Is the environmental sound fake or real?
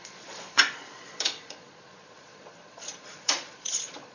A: fake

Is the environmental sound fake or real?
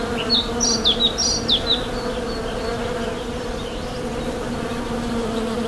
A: real